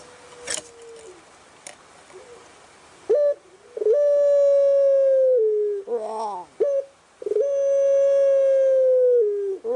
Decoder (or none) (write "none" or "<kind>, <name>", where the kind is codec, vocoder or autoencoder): none